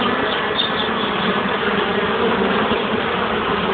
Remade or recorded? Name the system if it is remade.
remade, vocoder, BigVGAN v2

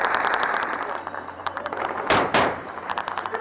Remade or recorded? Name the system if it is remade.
remade, vocoder, BigVGAN v2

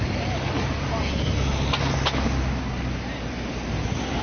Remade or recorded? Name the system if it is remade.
recorded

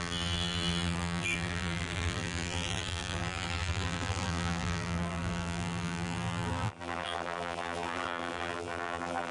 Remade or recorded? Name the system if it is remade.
remade, vocoder, BigVGAN v2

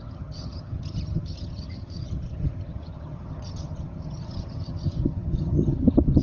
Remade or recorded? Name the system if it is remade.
remade, vocoder, HiFi-GAN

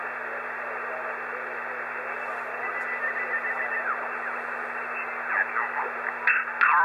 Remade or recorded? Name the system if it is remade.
recorded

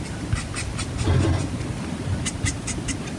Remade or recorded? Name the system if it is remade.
recorded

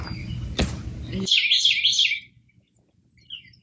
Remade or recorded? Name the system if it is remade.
recorded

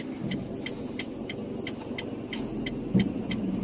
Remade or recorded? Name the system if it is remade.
recorded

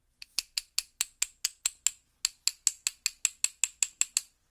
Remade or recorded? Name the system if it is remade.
recorded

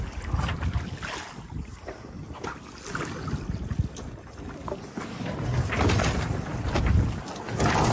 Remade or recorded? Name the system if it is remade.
recorded